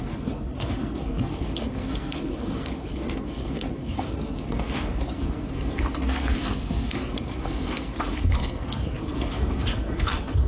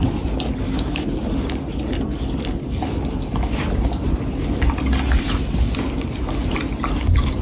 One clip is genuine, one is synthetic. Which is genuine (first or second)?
second